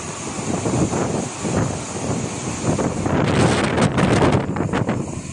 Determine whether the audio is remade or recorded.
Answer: recorded